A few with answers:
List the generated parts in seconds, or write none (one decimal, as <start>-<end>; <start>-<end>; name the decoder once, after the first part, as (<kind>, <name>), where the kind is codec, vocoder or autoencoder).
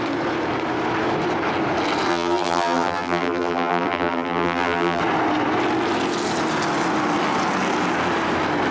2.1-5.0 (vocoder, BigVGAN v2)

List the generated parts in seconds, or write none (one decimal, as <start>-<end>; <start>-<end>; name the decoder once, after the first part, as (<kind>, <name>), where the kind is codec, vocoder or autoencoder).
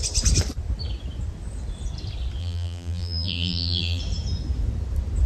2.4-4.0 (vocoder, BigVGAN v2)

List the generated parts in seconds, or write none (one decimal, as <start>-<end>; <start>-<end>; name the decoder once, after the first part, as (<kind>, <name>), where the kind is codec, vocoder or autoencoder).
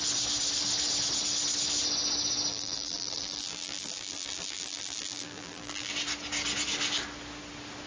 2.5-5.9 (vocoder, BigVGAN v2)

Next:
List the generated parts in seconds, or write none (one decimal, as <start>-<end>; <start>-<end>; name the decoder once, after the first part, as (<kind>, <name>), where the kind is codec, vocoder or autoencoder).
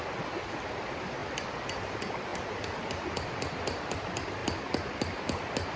none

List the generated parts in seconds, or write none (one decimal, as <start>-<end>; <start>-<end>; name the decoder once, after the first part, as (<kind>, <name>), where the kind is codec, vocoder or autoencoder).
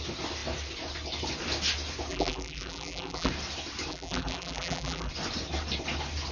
2.1-3.3 (vocoder, BigVGAN v2); 3.9-5.1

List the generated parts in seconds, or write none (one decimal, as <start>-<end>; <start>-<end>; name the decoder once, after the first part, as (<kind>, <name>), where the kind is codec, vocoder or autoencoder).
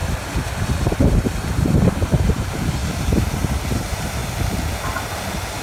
1.5-4.2 (vocoder, BigVGAN v2)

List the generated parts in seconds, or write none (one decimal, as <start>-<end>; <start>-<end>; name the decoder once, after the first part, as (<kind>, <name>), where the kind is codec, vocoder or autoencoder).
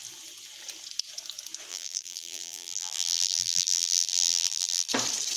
1.7-4.9 (vocoder, BigVGAN v2)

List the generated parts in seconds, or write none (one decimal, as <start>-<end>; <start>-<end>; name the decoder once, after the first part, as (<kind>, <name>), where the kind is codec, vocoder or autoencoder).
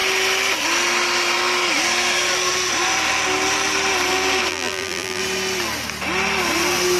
4.5-5.2 (vocoder, BigVGAN v2)